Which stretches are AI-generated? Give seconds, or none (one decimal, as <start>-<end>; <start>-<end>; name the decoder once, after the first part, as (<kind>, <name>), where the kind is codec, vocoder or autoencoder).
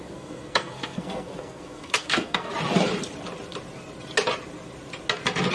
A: 0.0-2.5 (codec, SNAC)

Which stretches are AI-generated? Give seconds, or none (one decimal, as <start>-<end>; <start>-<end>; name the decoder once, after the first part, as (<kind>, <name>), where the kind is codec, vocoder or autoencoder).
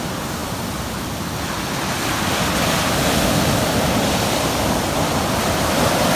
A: none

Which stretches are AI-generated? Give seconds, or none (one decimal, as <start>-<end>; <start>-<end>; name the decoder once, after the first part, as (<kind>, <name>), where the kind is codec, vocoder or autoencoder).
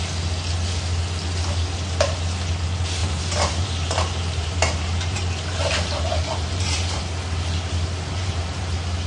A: 3.0-7.0 (vocoder, BigVGAN v2); 8.2-8.7